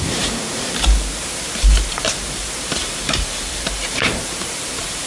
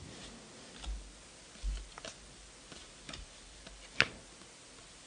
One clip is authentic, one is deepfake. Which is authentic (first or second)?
second